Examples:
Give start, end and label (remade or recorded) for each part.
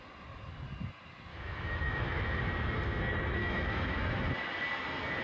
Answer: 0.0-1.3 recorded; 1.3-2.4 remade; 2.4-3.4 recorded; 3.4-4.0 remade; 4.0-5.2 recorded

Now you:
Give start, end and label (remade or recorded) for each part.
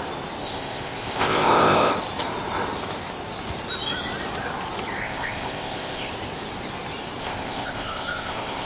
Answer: 0.0-0.4 recorded; 0.4-1.9 remade; 1.9-5.0 recorded; 5.0-6.1 remade; 6.1-7.2 recorded; 7.2-8.7 remade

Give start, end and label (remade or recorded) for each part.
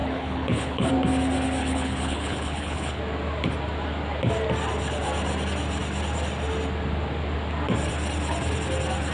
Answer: 0.0-0.9 remade; 0.9-1.6 recorded; 1.6-3.0 remade; 3.0-9.1 recorded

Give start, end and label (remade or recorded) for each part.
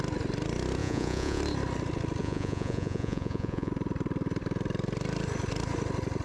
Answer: 0.0-0.8 recorded; 0.8-1.4 remade; 1.4-2.2 recorded; 2.2-3.7 remade; 3.7-6.2 recorded